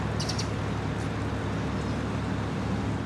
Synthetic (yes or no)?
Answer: no